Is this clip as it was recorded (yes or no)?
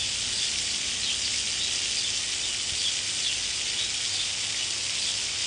yes